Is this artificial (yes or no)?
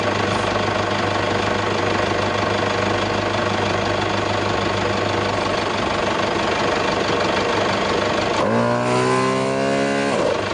no